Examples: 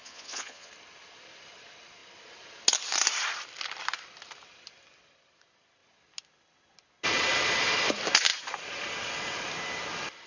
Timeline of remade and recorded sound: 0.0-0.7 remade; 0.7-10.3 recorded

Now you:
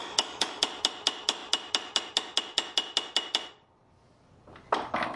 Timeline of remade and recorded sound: 0.0-0.6 remade; 0.6-5.2 recorded